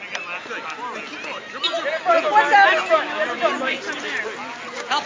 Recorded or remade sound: recorded